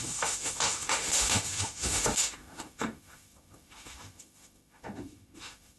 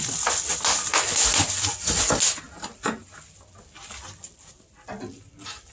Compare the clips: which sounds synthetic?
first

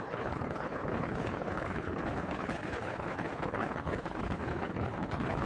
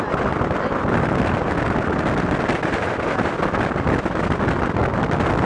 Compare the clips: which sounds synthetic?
first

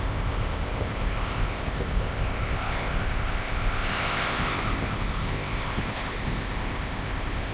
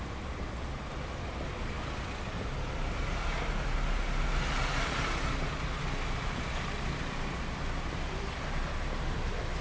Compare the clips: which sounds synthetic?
first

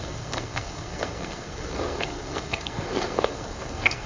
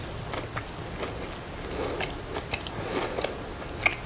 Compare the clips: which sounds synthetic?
first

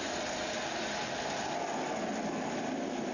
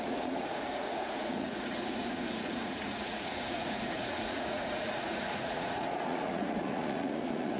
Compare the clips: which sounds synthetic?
second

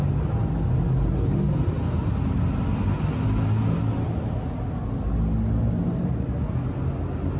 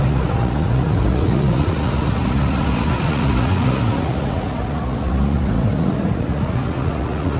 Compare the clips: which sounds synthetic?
second